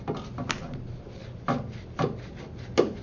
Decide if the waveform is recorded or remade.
recorded